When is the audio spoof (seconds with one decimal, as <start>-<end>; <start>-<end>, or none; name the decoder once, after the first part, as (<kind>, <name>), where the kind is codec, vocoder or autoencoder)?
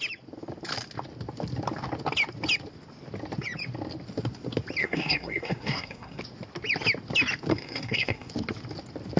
4.8-6.2 (codec, SNAC); 7.5-8.3